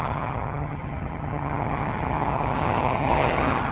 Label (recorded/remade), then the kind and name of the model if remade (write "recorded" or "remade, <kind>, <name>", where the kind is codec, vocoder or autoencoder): remade, vocoder, HiFi-GAN